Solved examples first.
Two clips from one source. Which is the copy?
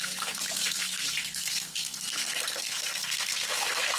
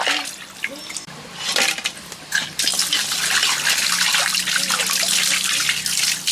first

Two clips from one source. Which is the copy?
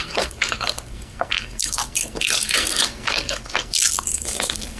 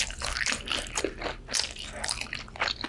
first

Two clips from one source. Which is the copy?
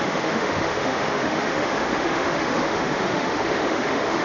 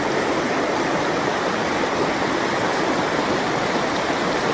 first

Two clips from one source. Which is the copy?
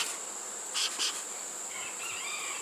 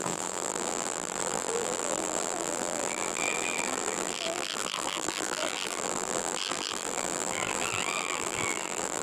second